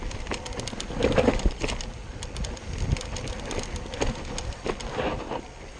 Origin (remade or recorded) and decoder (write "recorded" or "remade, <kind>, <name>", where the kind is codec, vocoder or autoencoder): recorded